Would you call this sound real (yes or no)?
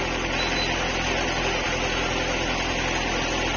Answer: yes